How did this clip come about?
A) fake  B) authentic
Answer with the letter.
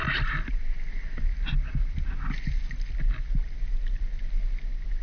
B